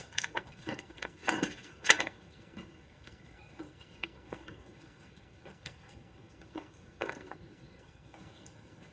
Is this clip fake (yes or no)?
yes